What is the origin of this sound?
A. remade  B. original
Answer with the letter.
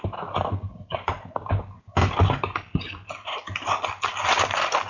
B